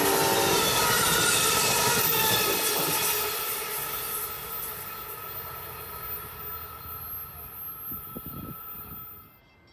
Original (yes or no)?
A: yes